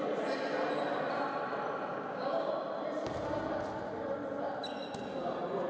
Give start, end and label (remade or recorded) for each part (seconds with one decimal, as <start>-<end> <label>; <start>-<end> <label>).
0.0-1.9 recorded; 1.9-2.5 remade; 2.5-5.7 recorded

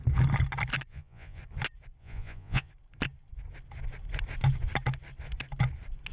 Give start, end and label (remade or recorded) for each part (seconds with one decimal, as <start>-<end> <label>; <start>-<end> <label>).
0.0-0.9 recorded; 0.9-1.4 remade; 1.4-2.0 recorded; 2.0-2.7 remade; 2.7-6.1 recorded

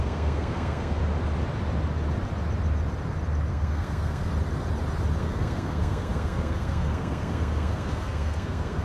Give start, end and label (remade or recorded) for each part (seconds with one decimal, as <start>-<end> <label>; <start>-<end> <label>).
0.0-1.0 remade; 1.0-3.5 recorded; 3.5-4.3 remade; 4.3-5.2 recorded; 5.2-8.8 remade

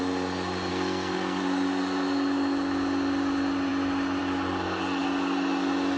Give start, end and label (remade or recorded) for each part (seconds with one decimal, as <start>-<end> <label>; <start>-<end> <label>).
0.0-0.7 recorded; 0.7-1.4 remade; 1.4-6.0 recorded

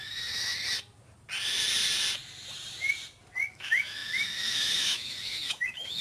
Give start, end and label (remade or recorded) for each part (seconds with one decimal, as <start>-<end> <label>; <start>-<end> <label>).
0.0-0.5 remade; 0.5-3.5 recorded; 3.5-6.0 remade

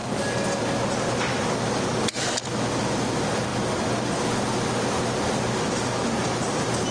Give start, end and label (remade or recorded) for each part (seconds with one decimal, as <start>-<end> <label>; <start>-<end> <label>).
0.0-6.9 recorded

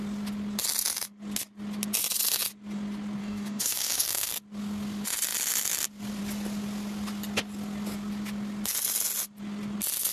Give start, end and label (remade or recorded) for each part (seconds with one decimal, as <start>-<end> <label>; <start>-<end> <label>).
0.0-3.2 recorded; 3.2-4.3 remade; 4.3-10.1 recorded